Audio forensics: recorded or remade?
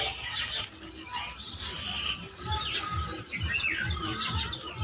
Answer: recorded